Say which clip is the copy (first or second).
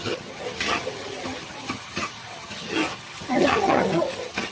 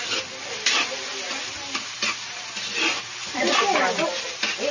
first